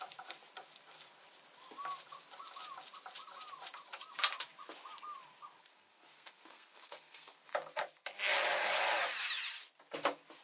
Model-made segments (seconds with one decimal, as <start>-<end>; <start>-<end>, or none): 5.7-7.4